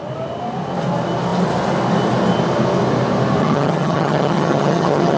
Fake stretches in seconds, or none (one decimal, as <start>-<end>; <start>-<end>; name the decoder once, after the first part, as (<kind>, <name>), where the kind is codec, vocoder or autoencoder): 3.4-5.2 (vocoder, HiFi-GAN)